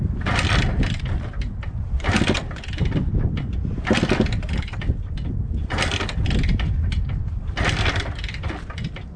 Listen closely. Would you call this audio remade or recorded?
recorded